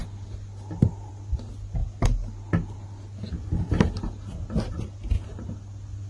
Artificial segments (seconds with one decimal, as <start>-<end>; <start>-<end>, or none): none